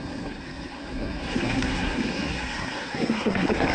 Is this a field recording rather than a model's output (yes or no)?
no